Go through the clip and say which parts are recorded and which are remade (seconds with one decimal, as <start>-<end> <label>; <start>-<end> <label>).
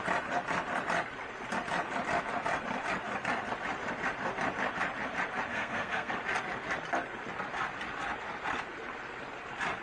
0.0-5.5 recorded; 5.5-6.1 remade; 6.1-9.8 recorded